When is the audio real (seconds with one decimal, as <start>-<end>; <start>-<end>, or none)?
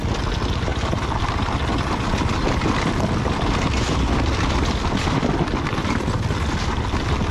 0.0-7.3